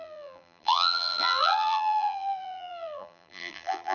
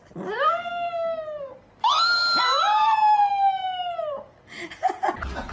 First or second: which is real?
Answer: second